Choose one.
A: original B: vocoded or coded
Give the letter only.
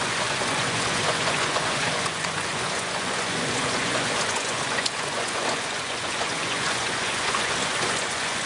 B